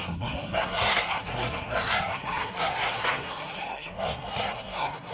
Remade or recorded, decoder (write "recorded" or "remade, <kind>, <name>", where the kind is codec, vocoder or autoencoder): remade, codec, SNAC